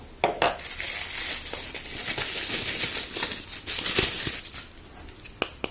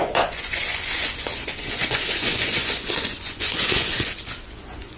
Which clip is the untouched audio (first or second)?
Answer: first